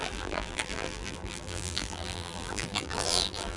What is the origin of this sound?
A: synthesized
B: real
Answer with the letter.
A